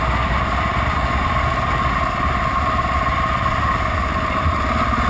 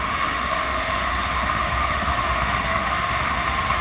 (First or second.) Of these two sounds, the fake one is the second